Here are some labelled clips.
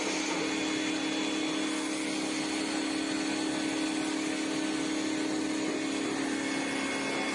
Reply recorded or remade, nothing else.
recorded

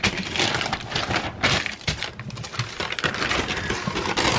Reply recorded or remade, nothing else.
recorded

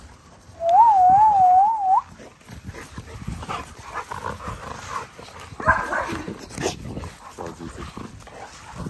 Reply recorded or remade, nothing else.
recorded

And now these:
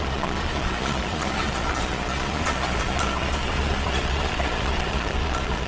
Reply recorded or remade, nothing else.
remade